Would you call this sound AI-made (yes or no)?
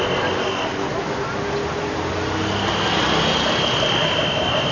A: no